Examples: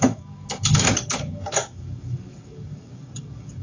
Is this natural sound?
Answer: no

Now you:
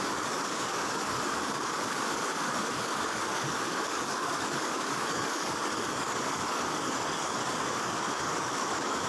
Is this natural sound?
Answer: no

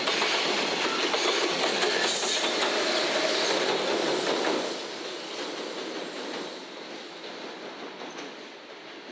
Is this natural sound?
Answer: yes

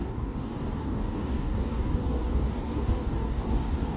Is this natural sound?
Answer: no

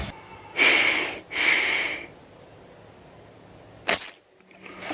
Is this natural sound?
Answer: yes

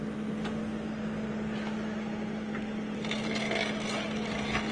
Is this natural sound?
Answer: yes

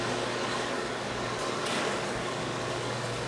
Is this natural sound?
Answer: no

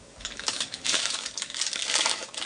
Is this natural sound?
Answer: no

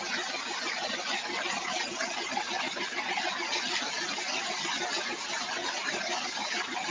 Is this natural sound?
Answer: yes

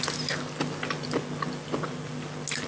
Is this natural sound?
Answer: yes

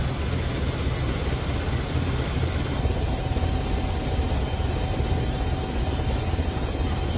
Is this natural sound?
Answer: yes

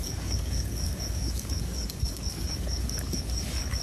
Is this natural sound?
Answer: no